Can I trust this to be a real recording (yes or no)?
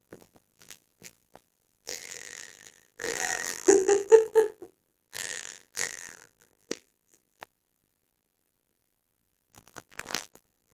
no